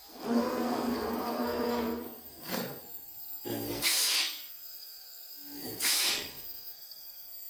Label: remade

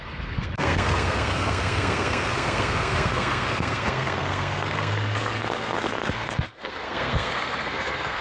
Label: remade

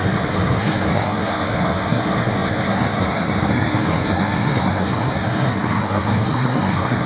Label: remade